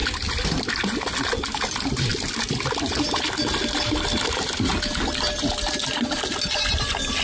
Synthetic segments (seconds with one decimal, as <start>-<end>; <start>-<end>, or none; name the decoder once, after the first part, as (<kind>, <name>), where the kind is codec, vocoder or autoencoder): none